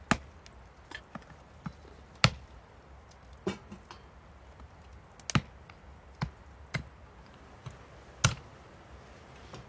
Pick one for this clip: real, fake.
real